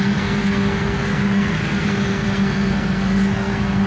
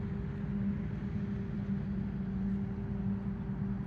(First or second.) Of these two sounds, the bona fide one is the second